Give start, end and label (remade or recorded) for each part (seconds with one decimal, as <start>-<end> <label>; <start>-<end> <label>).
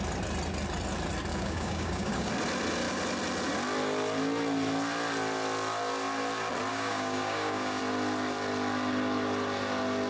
0.0-1.3 recorded; 1.3-2.3 remade; 2.3-6.7 recorded; 6.7-7.8 remade; 7.8-10.1 recorded